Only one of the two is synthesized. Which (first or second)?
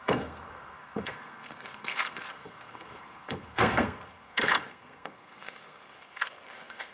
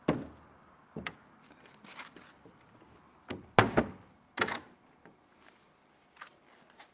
first